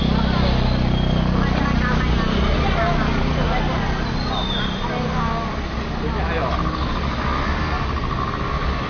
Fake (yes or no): no